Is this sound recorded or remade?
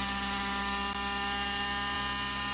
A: recorded